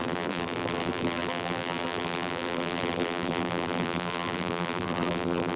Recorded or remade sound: remade